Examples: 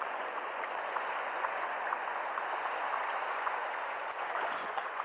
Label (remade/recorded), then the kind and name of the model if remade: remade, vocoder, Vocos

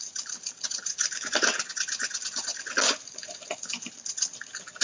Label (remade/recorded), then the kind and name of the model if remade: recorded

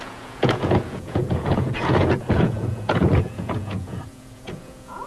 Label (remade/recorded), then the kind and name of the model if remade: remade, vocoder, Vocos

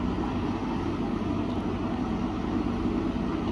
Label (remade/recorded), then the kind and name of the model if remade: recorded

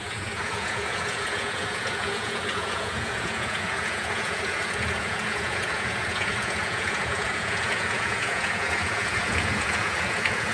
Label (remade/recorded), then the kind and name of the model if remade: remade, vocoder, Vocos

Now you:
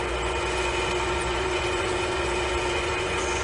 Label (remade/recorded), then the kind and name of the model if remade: remade, vocoder, Vocos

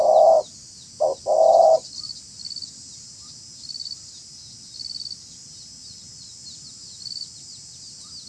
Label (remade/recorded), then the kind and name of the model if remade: recorded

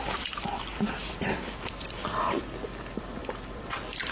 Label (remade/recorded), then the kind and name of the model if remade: recorded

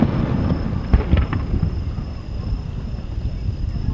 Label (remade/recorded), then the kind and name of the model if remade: recorded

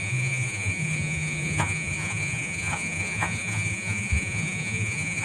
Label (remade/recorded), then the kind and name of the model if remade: remade, vocoder, Vocos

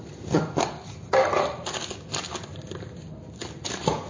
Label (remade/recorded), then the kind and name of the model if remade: recorded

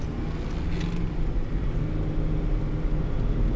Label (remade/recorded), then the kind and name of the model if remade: recorded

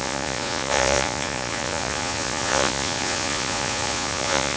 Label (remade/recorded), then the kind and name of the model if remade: remade, vocoder, Vocos